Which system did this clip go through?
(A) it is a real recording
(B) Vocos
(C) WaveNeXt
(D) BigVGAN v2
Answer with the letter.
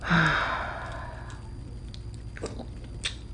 A